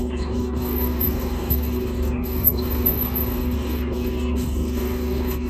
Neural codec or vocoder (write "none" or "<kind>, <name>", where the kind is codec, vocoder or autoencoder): codec, DAC